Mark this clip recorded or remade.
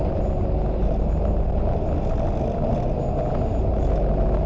recorded